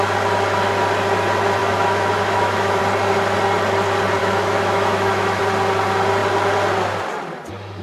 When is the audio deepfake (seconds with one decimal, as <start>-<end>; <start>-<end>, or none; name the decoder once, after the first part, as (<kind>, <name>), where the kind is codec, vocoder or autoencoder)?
1.6-2.8 (autoencoder, DAC-VAE); 4.2-5.4